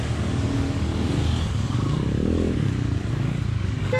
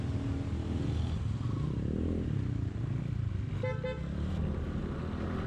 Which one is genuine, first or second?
second